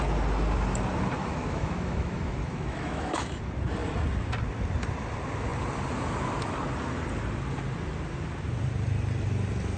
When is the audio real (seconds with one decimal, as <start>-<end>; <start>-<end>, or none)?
0.0-1.2; 3.4-9.8